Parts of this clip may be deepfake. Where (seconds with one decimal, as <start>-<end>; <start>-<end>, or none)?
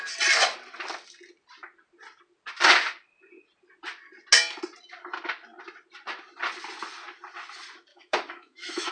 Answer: 7.9-8.9